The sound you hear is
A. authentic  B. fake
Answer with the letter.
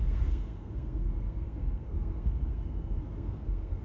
B